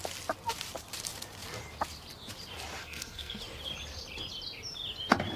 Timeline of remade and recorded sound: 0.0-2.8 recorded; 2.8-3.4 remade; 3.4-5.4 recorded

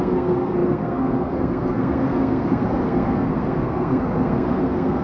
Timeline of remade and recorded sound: 0.0-5.0 remade

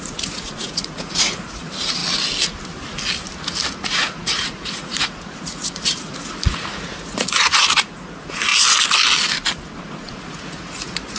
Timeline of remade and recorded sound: 0.0-2.0 remade; 2.0-3.8 recorded; 3.8-8.5 remade; 8.5-9.8 recorded; 9.8-11.2 remade

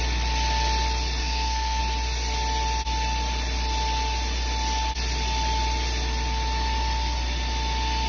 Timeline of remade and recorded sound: 0.0-1.2 recorded; 1.2-1.8 remade; 1.8-8.1 recorded

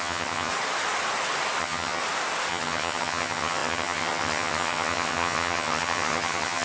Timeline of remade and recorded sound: 0.0-0.5 remade; 0.5-1.6 recorded; 1.6-2.0 remade; 2.0-2.5 recorded; 2.5-6.6 remade